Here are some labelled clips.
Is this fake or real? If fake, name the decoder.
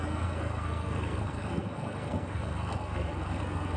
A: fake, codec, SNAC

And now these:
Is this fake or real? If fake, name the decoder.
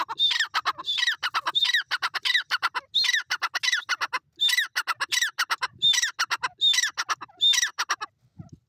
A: real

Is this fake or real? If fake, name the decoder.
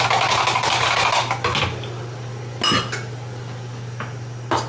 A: real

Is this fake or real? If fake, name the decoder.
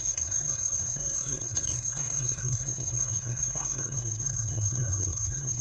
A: fake, codec, SNAC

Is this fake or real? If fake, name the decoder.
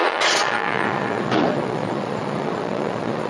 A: fake, vocoder, Vocos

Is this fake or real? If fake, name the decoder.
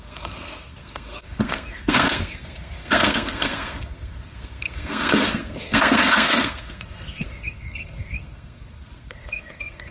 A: fake, codec, SNAC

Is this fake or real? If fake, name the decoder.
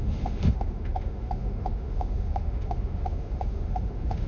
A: fake, autoencoder, DAC-VAE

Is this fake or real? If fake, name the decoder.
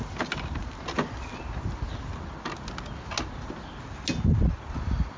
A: real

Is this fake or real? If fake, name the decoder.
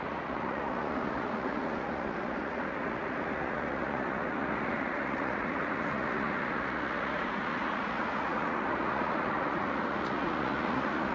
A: fake, vocoder, Vocos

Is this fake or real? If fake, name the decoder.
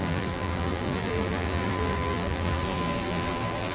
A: fake, vocoder, BigVGAN v2